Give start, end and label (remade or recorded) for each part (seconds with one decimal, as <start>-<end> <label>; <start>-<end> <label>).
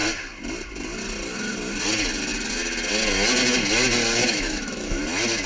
0.0-4.2 recorded; 4.2-5.0 remade; 5.0-5.5 recorded